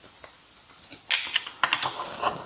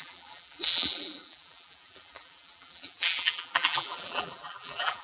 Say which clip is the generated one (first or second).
second